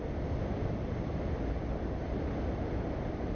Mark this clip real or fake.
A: real